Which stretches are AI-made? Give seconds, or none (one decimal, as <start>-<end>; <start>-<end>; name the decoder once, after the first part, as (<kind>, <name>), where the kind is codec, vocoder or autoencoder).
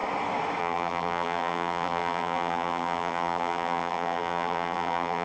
0.6-5.2 (vocoder, BigVGAN v2)